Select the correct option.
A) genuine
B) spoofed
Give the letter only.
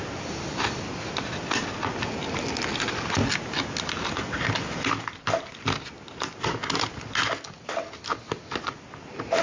A